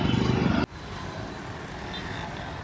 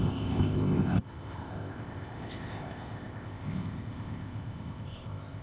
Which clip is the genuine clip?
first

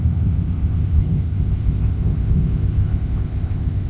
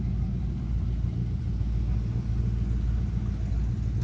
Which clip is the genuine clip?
second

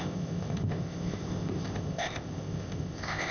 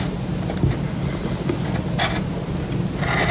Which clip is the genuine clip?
second